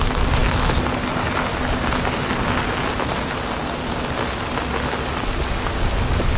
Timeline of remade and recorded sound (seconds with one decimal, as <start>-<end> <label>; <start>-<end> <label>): 0.0-6.4 recorded